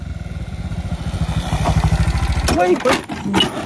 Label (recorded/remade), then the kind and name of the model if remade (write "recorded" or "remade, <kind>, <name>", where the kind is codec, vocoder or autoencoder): recorded